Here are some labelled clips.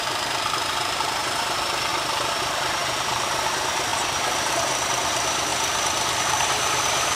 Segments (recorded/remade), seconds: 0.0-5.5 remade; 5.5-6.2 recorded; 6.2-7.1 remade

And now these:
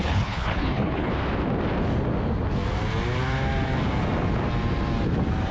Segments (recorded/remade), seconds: 0.0-1.1 remade; 1.1-5.5 recorded

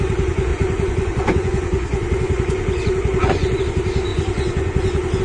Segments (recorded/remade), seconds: 0.0-0.5 recorded; 0.5-3.6 remade; 3.6-4.1 recorded; 4.1-5.2 remade

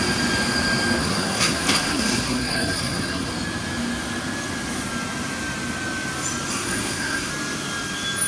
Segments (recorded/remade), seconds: 0.0-1.0 recorded; 1.0-3.3 remade; 3.3-6.5 recorded; 6.5-7.3 remade; 7.3-8.3 recorded

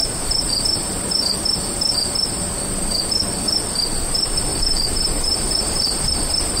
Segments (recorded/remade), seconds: 0.0-4.0 recorded; 4.0-6.6 remade

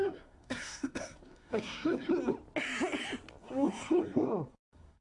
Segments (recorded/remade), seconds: 0.0-2.1 remade; 2.1-3.4 recorded; 3.4-5.0 remade

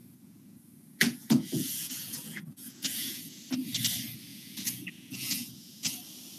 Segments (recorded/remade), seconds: 0.0-3.4 remade; 3.4-4.3 recorded; 4.3-5.9 remade; 5.9-6.4 recorded

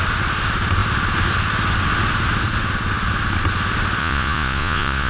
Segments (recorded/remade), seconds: 0.0-4.0 recorded; 4.0-5.1 remade